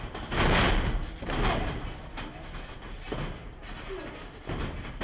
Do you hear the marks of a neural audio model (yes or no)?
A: no